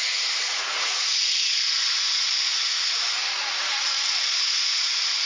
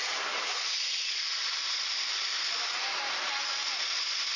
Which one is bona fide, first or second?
second